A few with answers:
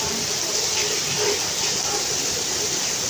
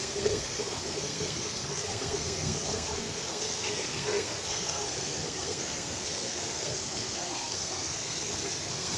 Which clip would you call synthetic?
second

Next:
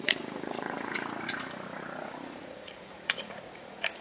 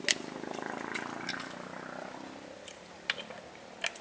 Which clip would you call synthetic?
first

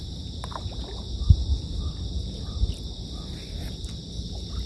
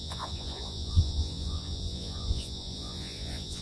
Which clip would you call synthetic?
second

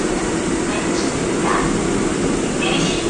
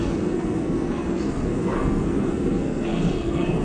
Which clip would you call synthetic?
second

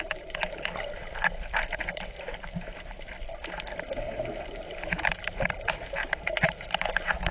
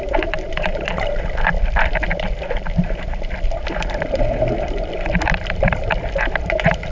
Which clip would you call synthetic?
second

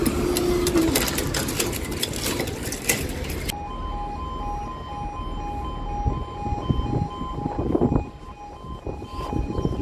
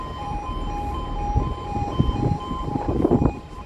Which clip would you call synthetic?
second